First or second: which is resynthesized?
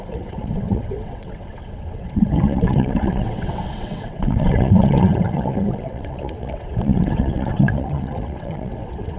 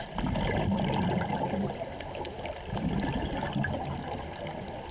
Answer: first